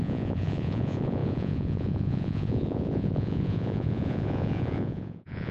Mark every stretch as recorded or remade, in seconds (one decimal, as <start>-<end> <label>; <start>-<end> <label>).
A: 0.0-5.5 remade